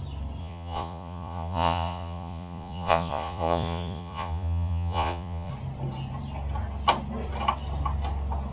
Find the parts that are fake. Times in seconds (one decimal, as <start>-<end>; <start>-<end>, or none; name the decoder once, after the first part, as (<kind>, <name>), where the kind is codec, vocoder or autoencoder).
0.4-5.5 (vocoder, Vocos)